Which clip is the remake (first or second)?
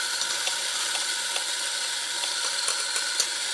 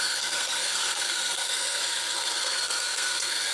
second